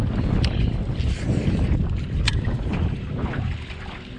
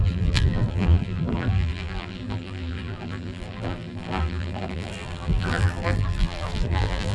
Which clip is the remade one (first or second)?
second